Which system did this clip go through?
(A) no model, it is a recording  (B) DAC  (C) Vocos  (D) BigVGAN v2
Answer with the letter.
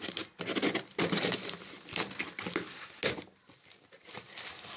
A